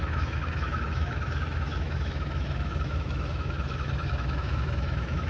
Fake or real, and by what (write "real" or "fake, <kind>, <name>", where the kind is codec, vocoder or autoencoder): fake, autoencoder, DAC-VAE